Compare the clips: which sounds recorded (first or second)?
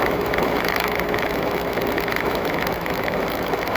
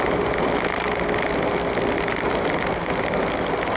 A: second